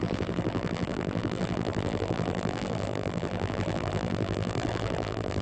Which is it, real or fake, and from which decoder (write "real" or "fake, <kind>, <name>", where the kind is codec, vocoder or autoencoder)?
fake, vocoder, BigVGAN v2